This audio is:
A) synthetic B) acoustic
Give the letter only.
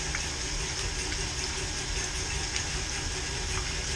B